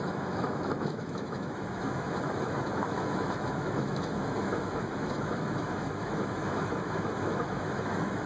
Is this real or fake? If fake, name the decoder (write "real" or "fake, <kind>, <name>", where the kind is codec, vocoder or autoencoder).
fake, autoencoder, DAC-VAE